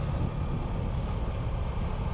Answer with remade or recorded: recorded